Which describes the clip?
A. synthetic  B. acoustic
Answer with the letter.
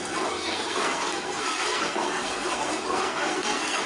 A